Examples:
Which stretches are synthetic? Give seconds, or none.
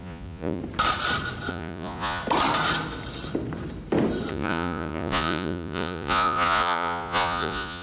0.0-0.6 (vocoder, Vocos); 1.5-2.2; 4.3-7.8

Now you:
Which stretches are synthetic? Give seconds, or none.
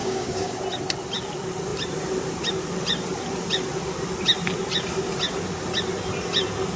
0.0-0.6 (codec, DAC)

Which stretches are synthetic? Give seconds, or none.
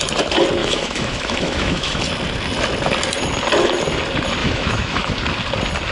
0.6-2.0 (autoencoder, DAC-VAE); 4.4-5.1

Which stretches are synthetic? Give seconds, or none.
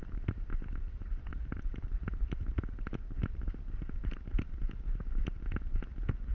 none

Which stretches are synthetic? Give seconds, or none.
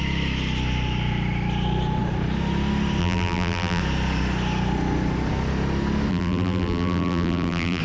3.0-3.8 (vocoder, BigVGAN v2); 6.1-7.8